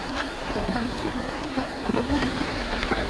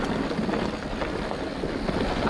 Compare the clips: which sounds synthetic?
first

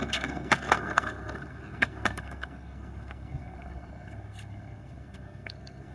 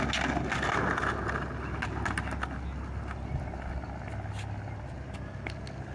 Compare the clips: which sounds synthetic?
first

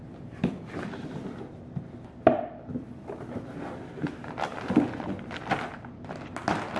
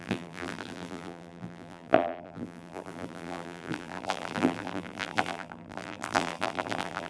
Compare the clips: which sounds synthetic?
second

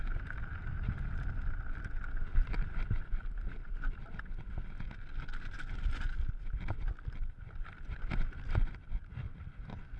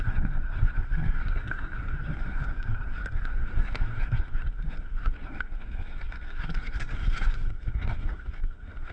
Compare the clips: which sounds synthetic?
second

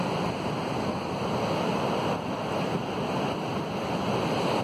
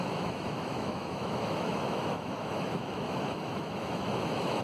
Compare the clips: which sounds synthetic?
second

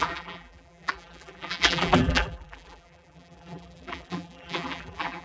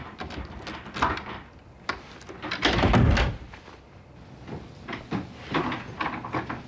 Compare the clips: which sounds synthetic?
first